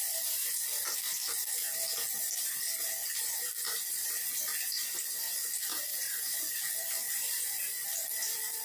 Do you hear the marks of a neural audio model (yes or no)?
no